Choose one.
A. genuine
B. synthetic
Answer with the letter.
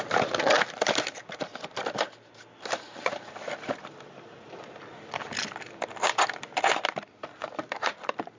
B